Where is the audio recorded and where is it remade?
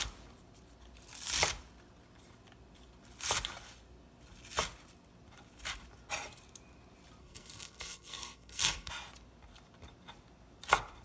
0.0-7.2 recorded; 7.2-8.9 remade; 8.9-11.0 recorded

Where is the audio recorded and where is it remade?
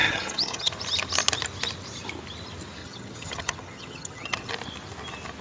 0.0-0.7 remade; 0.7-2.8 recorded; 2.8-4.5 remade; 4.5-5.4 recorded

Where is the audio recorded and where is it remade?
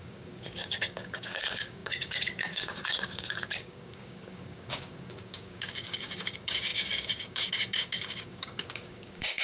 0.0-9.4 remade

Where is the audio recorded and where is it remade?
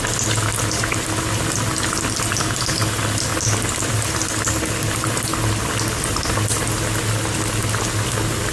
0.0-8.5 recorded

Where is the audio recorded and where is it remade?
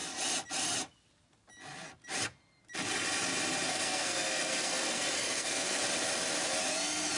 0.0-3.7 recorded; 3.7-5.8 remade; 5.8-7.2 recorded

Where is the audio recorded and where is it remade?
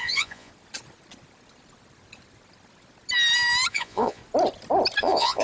0.0-0.5 remade; 0.5-3.7 recorded; 3.7-4.2 remade; 4.2-5.0 recorded; 5.0-5.4 remade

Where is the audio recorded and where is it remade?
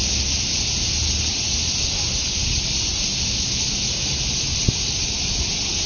0.0-5.9 recorded